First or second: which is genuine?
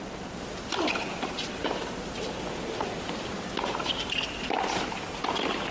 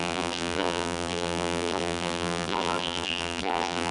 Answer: first